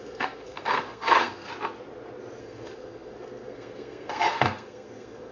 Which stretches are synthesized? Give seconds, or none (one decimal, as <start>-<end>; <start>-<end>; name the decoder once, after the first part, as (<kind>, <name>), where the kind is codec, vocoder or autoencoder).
0.0-1.5 (codec, SNAC); 2.4-5.3